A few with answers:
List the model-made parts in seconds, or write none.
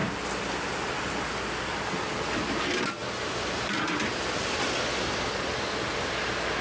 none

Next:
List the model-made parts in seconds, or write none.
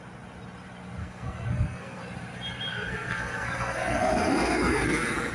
1.0-2.0 (codec, SNAC); 2.7-5.3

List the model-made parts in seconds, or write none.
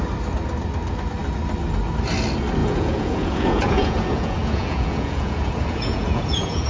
2.6-6.7 (vocoder, Vocos)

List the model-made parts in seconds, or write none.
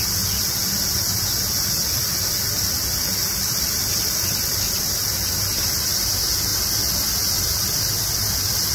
none